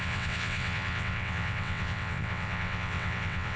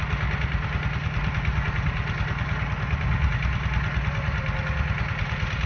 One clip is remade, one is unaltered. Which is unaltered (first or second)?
second